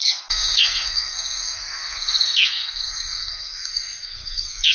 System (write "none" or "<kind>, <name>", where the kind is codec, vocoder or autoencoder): codec, SNAC